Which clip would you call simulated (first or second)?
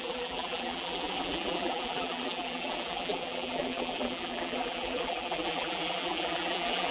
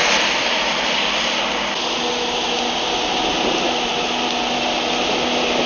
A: first